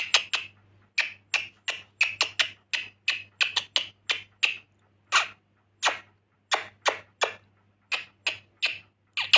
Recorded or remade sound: recorded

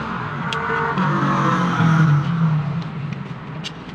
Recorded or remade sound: recorded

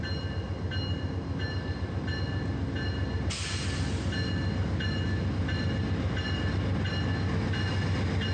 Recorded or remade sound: recorded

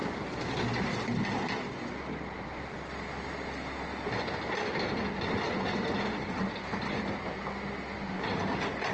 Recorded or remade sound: recorded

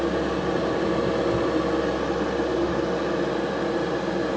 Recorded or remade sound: recorded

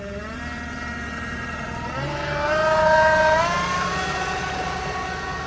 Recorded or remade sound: recorded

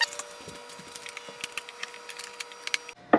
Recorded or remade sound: recorded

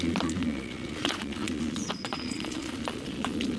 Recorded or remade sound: remade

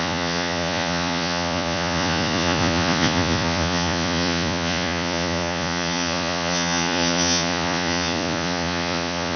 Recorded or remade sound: remade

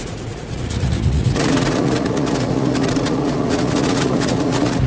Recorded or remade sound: remade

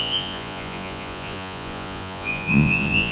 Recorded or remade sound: remade